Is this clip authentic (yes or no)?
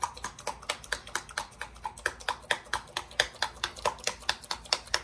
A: yes